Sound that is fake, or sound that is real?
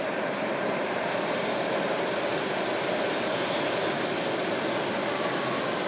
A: real